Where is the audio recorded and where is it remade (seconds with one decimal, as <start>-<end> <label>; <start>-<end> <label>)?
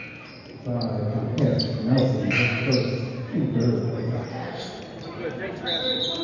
0.0-4.3 recorded; 4.3-4.8 remade; 4.8-6.2 recorded